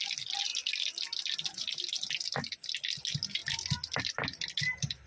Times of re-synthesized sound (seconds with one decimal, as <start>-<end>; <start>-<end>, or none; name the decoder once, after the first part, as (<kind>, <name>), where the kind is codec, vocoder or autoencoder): none